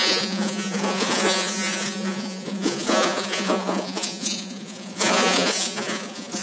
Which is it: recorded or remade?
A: remade